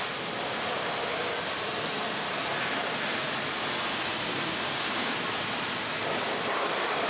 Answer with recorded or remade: recorded